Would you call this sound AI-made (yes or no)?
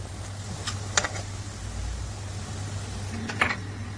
no